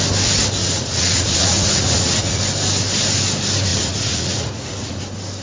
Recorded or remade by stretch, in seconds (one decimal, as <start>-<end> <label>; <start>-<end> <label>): 0.0-0.6 recorded; 0.6-2.4 remade; 2.4-3.7 recorded; 3.7-5.0 remade; 5.0-5.4 recorded

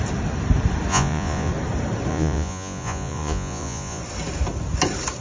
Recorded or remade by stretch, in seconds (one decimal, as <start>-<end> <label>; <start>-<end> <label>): 0.0-0.9 recorded; 0.9-1.5 remade; 1.5-2.1 recorded; 2.1-4.0 remade; 4.0-5.2 recorded

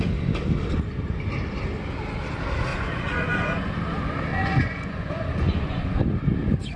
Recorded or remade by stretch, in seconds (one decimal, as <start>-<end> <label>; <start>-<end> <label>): 0.0-2.7 recorded; 2.7-3.7 remade; 3.7-4.3 recorded; 4.3-6.0 remade; 6.0-6.8 recorded

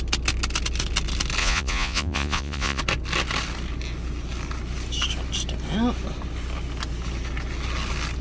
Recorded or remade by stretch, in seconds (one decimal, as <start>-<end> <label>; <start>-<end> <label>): 0.0-1.4 recorded; 1.4-2.8 remade; 2.8-8.2 recorded

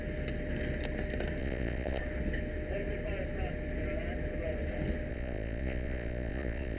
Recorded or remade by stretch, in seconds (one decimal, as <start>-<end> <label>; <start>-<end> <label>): 0.0-1.4 recorded; 1.4-2.0 remade; 2.0-5.1 recorded; 5.1-6.8 remade